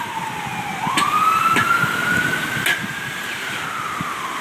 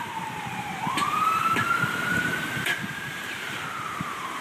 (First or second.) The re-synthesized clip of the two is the second